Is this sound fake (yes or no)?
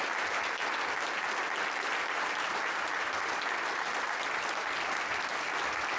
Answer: no